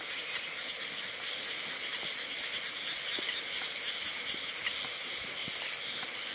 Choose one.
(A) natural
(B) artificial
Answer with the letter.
A